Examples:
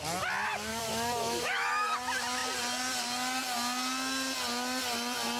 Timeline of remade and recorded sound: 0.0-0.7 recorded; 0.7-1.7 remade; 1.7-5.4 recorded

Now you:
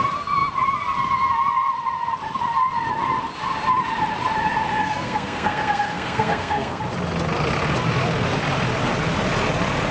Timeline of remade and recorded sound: 0.0-4.8 recorded; 4.8-6.8 remade; 6.8-9.9 recorded